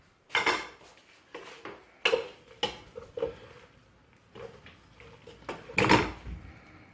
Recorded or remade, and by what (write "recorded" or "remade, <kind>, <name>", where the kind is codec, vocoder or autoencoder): recorded